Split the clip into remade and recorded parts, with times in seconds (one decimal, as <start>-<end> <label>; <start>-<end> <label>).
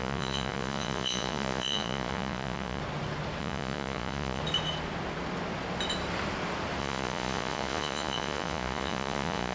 0.0-2.8 remade; 2.8-3.4 recorded; 3.4-4.4 remade; 4.4-6.8 recorded; 6.8-9.5 remade